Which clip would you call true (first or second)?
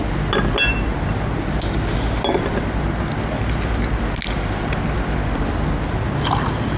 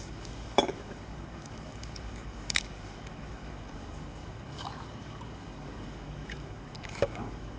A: first